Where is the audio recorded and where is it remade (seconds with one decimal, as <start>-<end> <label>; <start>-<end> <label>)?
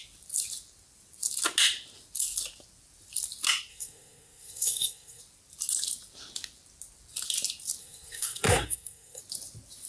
0.0-3.7 recorded; 3.7-5.2 remade; 5.2-7.8 recorded; 7.8-9.2 remade; 9.2-9.9 recorded